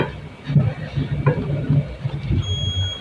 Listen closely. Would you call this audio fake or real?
real